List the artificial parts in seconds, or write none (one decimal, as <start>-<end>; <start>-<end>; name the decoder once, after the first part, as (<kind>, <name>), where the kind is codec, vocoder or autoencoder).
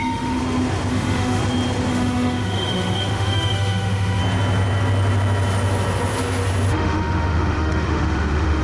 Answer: 0.0-0.4 (autoencoder, DAC-VAE); 0.9-1.4; 1.9-4.2; 6.7-8.6